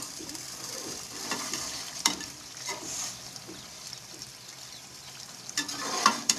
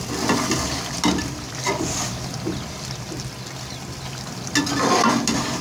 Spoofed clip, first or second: first